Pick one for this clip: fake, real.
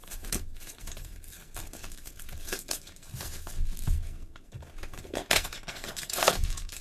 fake